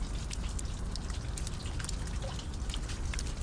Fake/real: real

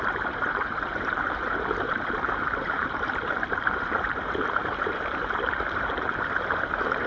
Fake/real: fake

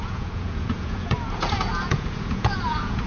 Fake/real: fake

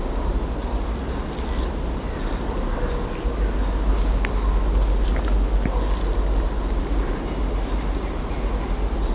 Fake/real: real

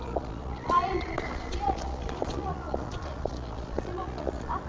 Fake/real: fake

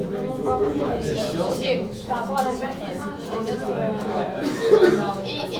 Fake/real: fake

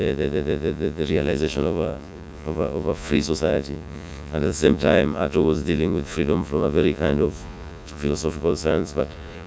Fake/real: fake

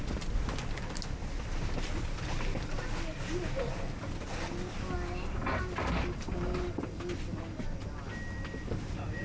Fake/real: real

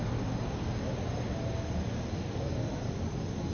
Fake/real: real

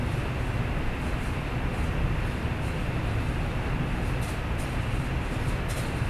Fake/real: real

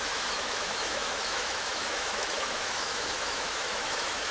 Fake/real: fake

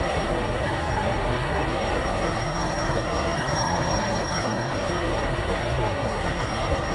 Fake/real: fake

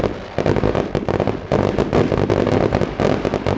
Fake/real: real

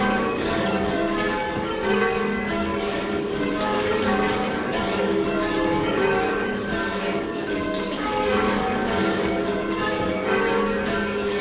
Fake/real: fake